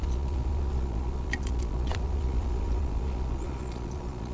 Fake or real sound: fake